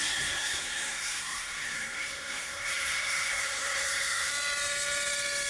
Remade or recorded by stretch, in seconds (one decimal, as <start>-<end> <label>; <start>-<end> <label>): 0.0-4.3 remade; 4.3-5.5 recorded